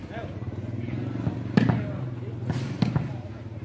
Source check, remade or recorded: recorded